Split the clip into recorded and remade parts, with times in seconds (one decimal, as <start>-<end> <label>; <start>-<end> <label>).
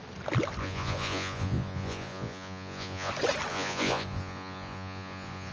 0.0-0.6 recorded; 0.6-3.1 remade; 3.1-3.5 recorded; 3.5-5.5 remade